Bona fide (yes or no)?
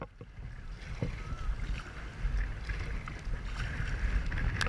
yes